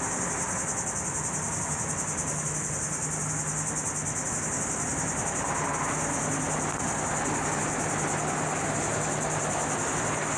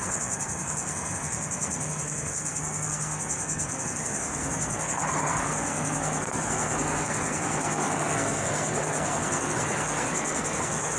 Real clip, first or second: first